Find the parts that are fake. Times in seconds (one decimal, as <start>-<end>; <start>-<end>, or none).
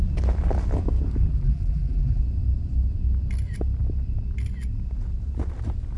1.3-2.2